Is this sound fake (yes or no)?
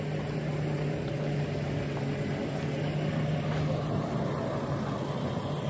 no